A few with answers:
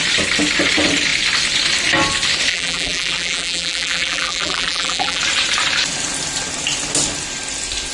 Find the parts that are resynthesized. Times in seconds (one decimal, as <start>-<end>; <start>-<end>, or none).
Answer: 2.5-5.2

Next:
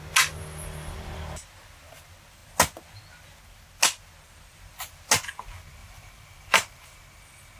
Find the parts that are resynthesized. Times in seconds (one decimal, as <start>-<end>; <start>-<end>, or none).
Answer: 5.8-7.0

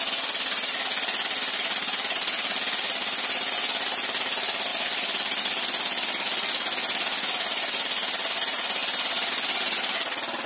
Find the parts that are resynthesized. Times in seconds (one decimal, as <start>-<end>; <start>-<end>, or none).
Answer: 4.7-5.4; 8.8-9.3

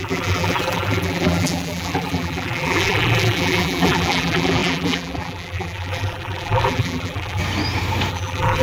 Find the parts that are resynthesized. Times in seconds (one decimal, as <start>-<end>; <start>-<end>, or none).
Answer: 0.0-7.4; 8.1-8.6

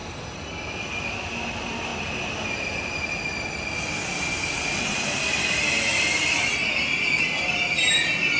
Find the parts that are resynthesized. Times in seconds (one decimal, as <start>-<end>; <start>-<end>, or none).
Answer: none

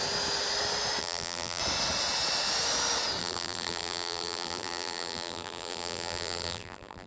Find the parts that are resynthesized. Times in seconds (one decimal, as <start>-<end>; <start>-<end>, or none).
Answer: 1.0-1.6; 3.2-7.1